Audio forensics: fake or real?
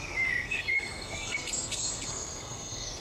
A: fake